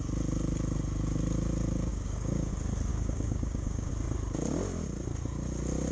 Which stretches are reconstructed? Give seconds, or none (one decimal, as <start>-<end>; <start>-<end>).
1.9-2.5; 2.9-3.9